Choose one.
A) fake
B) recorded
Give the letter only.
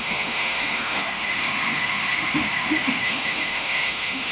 A